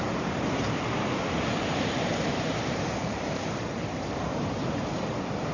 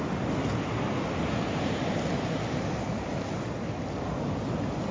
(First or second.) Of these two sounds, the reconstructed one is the first